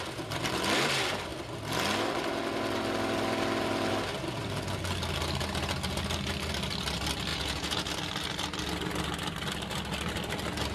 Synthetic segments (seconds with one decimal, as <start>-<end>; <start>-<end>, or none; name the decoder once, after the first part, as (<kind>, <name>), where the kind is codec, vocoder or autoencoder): 7.3-7.9 (vocoder, Vocos)